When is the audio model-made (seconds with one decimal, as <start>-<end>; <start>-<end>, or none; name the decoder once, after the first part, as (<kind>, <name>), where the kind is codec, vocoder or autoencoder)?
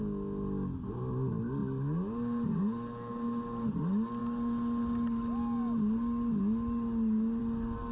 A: none